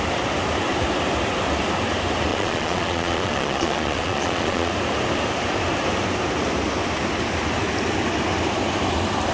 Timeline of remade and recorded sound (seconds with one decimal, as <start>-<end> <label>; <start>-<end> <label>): 0.0-2.3 recorded; 2.3-4.7 remade; 4.7-9.3 recorded